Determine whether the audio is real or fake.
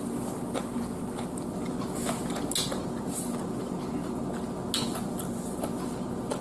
real